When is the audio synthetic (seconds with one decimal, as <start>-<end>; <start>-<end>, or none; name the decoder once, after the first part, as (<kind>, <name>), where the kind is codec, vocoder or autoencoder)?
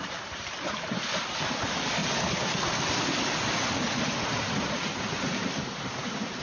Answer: 0.0-2.0 (vocoder, BigVGAN v2); 5.0-6.4